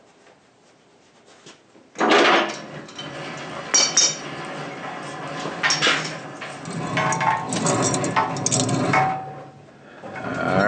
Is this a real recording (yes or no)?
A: yes